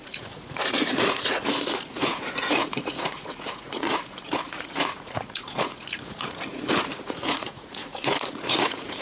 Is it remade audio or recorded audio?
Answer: remade